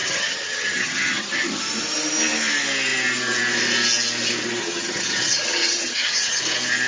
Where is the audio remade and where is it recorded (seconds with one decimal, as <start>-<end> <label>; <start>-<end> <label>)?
0.0-1.6 remade; 1.6-4.6 recorded; 4.6-6.4 remade; 6.4-6.9 recorded